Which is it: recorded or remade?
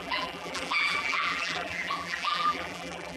remade